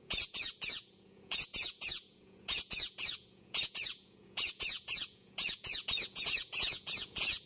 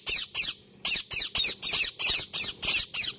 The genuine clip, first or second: second